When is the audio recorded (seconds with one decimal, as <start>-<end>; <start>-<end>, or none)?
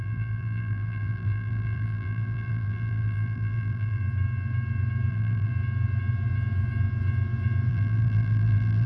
4.0-5.1; 5.5-7.7